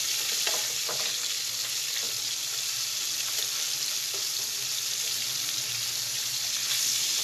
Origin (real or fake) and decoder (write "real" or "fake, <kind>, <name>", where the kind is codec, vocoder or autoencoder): real